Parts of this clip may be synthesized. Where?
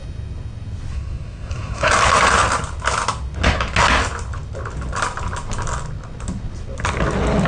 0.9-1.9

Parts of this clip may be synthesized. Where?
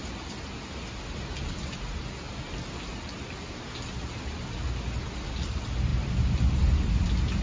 none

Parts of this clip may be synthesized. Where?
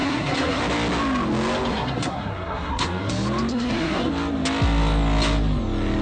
0.0-0.6; 1.7-3.1; 3.5-4.1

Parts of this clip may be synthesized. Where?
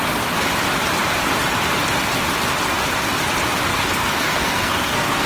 3.7-5.3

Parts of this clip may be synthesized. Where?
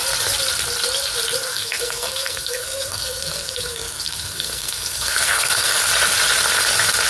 1.5-5.8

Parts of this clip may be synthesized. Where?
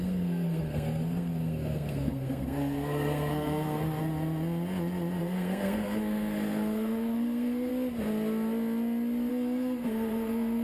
0.0-4.0; 5.2-7.7; 9.3-10.6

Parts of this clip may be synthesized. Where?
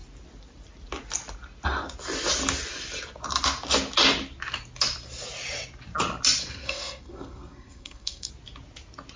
6.4-8.3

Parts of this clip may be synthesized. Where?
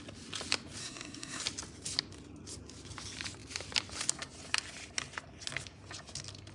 0.8-1.4